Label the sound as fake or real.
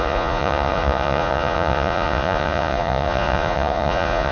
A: fake